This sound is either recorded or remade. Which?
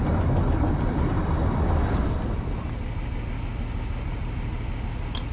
recorded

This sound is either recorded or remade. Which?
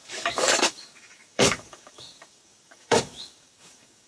remade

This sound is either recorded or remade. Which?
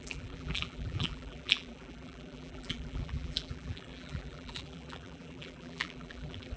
remade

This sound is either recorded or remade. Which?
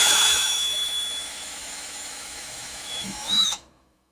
remade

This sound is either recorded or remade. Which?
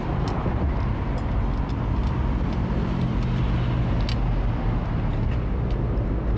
recorded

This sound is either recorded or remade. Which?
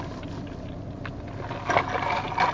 recorded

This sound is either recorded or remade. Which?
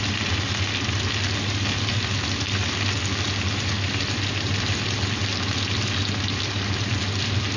recorded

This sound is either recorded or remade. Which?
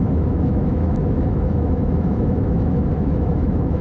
remade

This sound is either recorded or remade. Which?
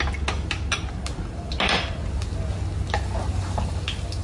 recorded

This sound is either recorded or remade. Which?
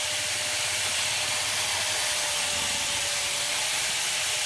recorded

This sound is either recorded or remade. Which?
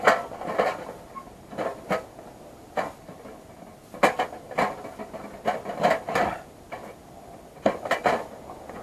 recorded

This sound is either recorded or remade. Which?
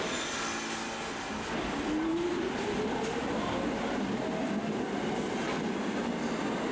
recorded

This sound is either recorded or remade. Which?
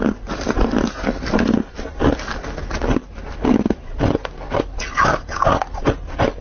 recorded